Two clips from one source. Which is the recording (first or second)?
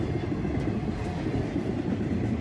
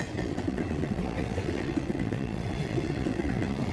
first